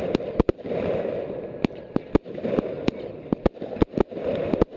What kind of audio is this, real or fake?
real